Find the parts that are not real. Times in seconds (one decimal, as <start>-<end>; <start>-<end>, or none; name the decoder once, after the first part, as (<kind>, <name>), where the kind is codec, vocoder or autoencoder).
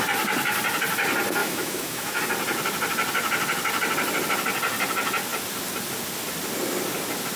1.4-2.2 (autoencoder, DAC-VAE)